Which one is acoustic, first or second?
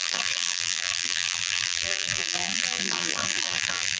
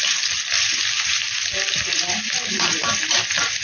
second